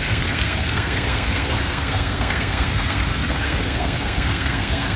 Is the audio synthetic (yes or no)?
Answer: yes